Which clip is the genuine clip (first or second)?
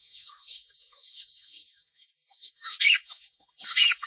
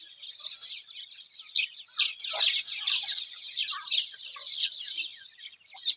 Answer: second